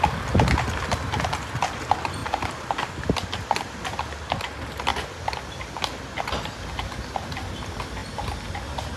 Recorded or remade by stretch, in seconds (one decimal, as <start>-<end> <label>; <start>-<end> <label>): 0.0-2.2 recorded; 2.2-2.9 remade; 2.9-9.0 recorded